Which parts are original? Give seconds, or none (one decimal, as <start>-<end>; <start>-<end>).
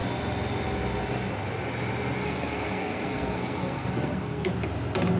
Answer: 0.0-2.2; 4.5-5.2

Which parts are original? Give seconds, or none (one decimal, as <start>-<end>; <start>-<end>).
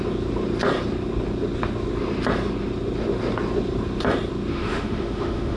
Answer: 0.0-4.5